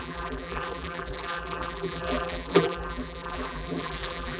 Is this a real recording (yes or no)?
no